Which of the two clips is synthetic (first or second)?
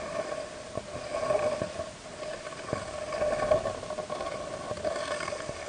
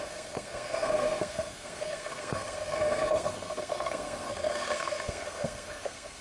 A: second